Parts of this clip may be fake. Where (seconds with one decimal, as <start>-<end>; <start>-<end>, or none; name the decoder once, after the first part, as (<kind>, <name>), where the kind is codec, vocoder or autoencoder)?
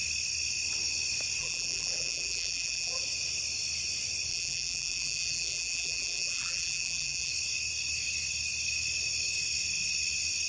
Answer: 1.4-3.0 (vocoder, BigVGAN v2); 4.3-7.3